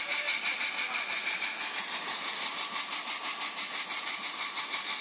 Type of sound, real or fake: real